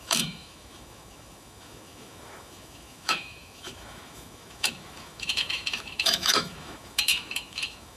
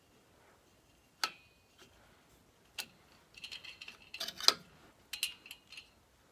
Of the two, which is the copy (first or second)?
first